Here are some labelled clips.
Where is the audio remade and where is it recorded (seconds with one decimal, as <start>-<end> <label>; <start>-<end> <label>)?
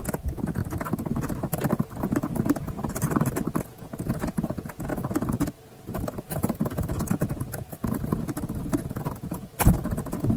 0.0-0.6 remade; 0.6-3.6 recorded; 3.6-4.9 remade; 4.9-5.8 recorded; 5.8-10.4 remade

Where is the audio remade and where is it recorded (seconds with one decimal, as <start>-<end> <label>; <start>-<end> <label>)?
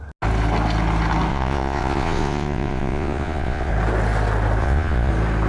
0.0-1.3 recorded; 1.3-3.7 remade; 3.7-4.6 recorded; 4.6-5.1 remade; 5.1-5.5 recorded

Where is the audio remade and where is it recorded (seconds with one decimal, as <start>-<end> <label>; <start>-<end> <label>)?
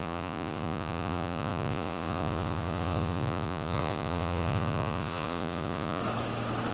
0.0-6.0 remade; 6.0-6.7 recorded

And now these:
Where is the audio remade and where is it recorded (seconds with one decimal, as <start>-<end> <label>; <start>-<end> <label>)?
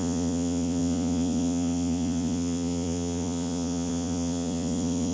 0.0-5.1 remade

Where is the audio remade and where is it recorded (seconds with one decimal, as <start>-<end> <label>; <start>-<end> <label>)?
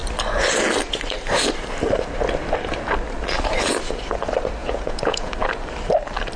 0.0-4.6 recorded; 4.6-5.3 remade; 5.3-6.4 recorded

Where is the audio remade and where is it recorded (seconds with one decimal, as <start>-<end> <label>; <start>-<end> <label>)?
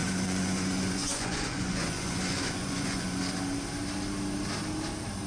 0.0-3.2 remade; 3.2-5.3 recorded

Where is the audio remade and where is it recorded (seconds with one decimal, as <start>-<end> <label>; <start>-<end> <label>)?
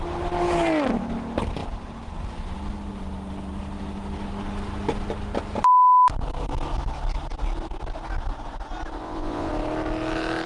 0.0-9.0 recorded; 9.0-9.5 remade; 9.5-10.5 recorded